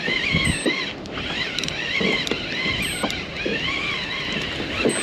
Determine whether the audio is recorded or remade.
recorded